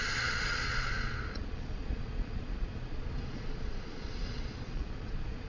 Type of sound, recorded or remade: remade